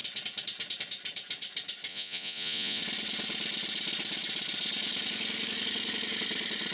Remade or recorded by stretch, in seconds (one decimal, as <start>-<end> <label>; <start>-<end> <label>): 0.0-1.9 recorded; 1.9-2.8 remade; 2.8-6.7 recorded